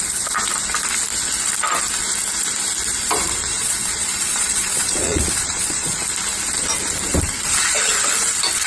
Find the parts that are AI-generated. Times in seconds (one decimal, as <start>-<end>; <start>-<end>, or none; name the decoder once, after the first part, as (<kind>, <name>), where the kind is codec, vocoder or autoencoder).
3.4-6.0 (vocoder, Vocos)